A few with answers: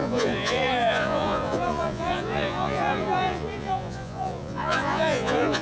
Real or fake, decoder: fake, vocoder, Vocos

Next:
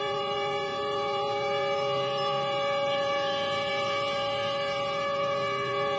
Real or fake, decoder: fake, vocoder, Vocos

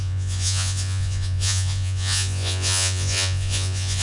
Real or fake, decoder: fake, vocoder, Vocos